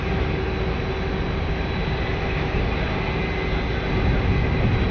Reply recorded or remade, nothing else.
recorded